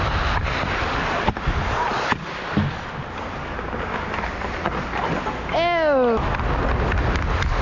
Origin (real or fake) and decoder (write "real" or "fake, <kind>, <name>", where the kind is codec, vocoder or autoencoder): real